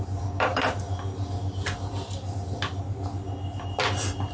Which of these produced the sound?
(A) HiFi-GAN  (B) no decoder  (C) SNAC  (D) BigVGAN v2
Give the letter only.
B